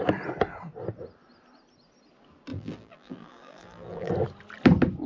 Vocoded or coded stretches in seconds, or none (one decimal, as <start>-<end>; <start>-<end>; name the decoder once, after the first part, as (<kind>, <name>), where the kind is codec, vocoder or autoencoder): 2.5-4.1 (vocoder, BigVGAN v2)